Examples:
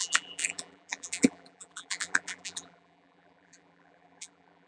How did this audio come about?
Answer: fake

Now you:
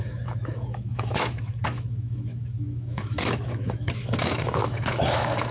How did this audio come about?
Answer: fake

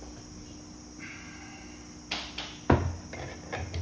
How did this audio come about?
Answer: real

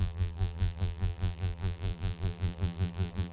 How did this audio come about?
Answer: fake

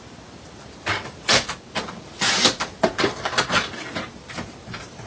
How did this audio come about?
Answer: real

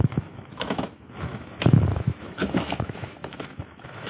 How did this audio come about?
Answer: fake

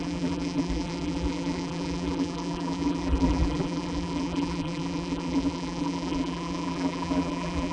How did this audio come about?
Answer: fake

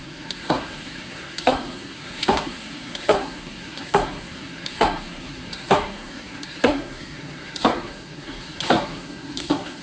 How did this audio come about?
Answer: fake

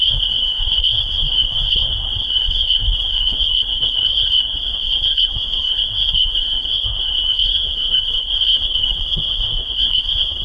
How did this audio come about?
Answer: fake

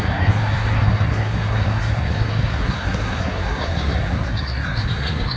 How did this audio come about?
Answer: fake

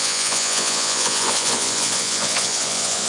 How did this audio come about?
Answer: fake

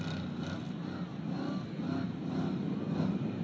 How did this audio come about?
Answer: real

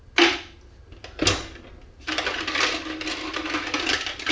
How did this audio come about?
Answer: real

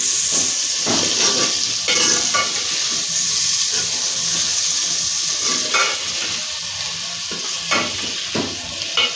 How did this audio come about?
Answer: real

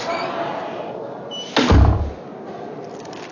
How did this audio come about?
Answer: real